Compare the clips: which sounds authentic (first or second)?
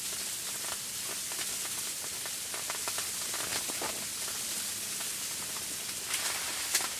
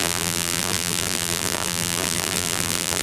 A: first